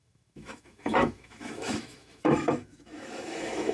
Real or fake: fake